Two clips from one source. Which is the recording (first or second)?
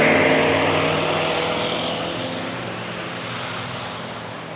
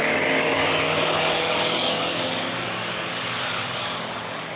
first